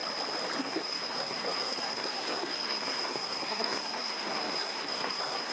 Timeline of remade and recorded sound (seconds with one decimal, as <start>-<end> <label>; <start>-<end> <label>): 0.0-0.6 recorded; 0.6-5.5 remade